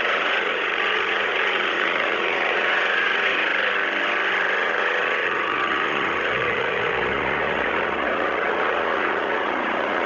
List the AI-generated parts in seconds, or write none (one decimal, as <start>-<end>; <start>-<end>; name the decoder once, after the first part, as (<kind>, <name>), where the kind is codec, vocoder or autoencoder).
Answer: 0.0-3.5 (vocoder, Vocos); 4.6-10.1